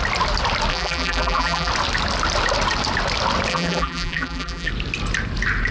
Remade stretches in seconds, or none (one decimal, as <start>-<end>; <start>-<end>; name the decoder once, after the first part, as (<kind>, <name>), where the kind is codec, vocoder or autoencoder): 0.7-1.7 (vocoder, BigVGAN v2); 3.5-4.7